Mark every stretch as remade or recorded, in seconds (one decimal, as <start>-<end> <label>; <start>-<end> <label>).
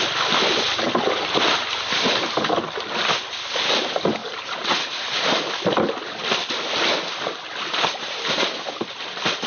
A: 0.0-4.2 recorded; 4.2-5.1 remade; 5.1-9.5 recorded